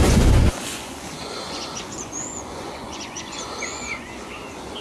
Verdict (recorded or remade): remade